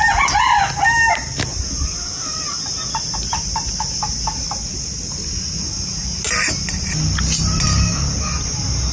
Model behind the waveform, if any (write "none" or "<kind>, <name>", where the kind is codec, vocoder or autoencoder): none